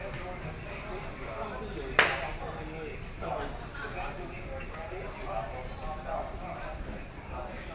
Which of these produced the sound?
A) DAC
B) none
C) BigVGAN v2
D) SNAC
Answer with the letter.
B